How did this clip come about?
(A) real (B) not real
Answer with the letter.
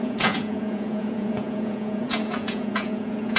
B